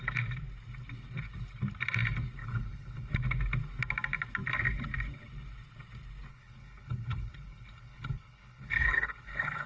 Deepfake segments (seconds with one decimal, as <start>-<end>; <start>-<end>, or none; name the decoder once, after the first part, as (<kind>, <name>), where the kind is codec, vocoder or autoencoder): 2.4-3.1 (codec, HILCodec); 6.3-9.7